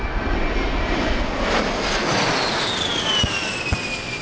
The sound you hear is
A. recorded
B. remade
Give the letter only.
A